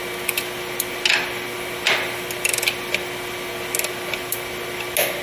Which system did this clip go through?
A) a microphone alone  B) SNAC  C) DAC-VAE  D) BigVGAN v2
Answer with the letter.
A